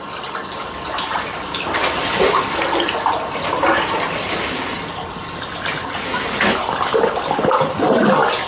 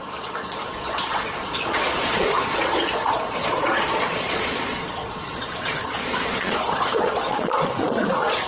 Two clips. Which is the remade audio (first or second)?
second